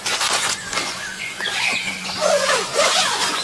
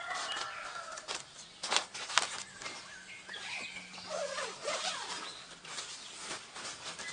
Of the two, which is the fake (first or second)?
first